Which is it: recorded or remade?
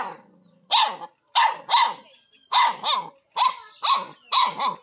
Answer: recorded